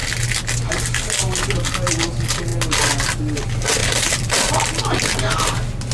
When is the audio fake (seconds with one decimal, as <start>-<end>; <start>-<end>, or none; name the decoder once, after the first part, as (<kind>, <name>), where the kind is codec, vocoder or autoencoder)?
3.8-4.5 (vocoder, BigVGAN v2)